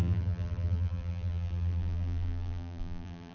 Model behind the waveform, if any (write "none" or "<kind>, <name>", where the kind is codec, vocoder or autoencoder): vocoder, BigVGAN v2